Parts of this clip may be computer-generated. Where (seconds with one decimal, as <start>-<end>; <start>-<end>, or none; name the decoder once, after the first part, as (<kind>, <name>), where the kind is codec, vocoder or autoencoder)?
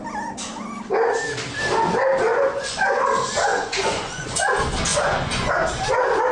2.3-3.0 (vocoder, Vocos); 3.5-4.4; 4.9-5.5